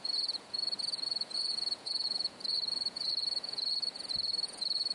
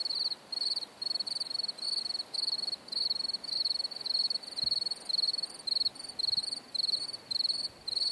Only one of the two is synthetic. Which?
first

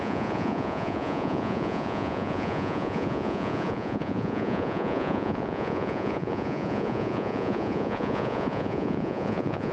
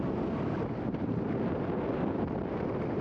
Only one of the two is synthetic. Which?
first